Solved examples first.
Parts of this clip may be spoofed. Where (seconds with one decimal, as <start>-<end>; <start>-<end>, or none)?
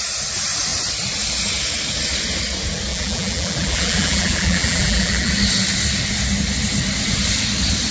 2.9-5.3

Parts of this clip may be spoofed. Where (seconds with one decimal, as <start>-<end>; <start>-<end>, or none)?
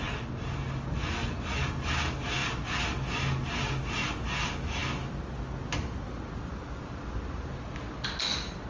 none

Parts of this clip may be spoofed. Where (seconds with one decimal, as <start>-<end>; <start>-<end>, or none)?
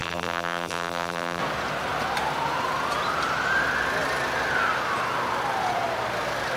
0.0-1.4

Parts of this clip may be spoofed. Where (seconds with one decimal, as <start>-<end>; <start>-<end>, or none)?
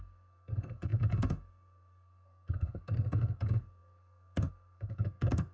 0.0-5.5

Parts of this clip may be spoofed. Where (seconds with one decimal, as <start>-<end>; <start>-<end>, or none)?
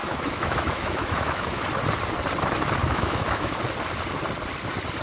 0.0-1.6; 2.8-3.6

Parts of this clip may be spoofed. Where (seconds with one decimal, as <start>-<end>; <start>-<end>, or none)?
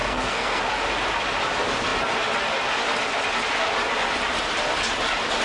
0.0-0.6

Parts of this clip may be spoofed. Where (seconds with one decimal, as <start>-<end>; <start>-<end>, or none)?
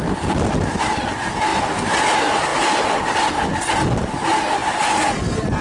none